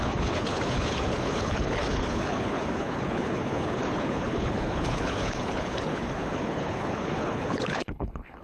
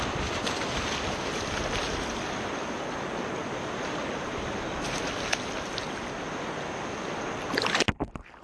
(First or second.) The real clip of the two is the second